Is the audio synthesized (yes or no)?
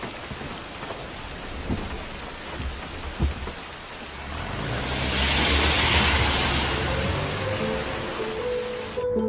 no